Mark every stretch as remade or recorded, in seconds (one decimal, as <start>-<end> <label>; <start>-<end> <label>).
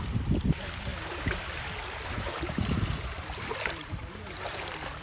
0.0-5.0 recorded